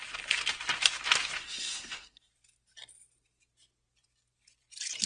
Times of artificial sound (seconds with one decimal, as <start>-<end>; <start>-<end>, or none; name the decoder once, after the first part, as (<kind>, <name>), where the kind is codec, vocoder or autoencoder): 1.4-2.3 (codec, SNAC)